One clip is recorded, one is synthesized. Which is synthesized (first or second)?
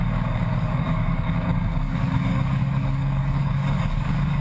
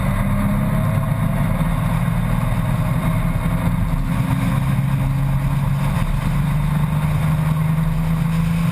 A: first